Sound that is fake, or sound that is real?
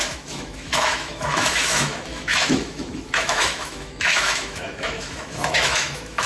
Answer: fake